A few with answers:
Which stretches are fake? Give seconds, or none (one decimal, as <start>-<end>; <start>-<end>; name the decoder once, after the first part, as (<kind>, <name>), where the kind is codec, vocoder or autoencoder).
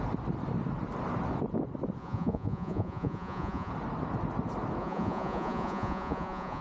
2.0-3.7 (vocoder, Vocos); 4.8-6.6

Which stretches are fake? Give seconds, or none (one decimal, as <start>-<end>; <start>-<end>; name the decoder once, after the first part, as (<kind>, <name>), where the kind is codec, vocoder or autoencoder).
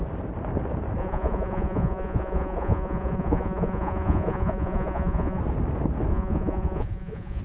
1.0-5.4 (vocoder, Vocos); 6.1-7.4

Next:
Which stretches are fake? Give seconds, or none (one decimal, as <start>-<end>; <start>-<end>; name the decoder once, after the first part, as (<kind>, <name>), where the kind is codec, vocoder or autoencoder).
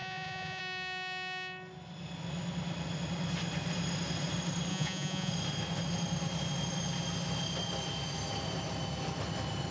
0.0-0.6 (vocoder, Vocos); 4.7-5.3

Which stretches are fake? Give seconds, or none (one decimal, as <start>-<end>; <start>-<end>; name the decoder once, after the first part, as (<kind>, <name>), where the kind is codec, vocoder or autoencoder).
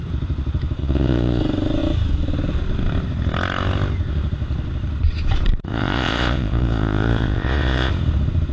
0.8-1.4 (vocoder, Vocos); 5.7-7.9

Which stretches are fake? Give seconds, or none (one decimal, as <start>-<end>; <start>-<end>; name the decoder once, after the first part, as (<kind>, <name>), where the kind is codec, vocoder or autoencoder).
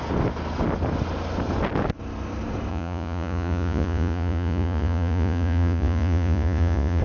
2.7-7.0 (vocoder, Vocos)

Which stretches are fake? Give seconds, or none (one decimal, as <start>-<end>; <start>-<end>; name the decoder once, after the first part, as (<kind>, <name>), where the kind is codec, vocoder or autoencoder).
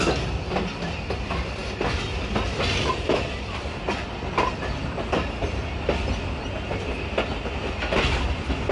none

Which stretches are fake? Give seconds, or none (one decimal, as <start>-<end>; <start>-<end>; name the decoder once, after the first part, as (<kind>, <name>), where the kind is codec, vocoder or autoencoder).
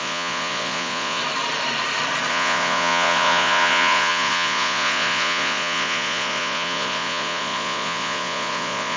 0.0-1.2 (vocoder, Vocos); 2.3-9.0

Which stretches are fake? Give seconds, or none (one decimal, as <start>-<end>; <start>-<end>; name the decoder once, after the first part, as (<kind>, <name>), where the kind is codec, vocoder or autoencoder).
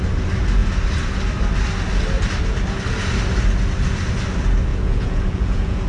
4.7-5.9 (vocoder, Vocos)